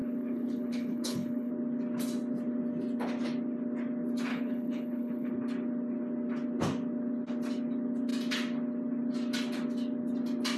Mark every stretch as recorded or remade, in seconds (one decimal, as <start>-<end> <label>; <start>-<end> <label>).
0.0-1.5 remade; 1.5-4.3 recorded; 4.3-5.3 remade; 5.3-10.6 recorded